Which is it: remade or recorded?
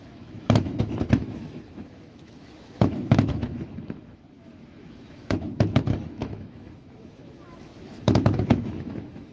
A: remade